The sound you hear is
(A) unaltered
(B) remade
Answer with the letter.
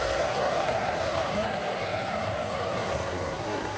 B